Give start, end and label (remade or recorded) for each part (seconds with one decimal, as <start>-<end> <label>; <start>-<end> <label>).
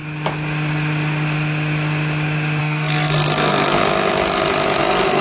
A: 0.0-2.6 recorded; 2.6-3.8 remade; 3.8-4.8 recorded; 4.8-5.2 remade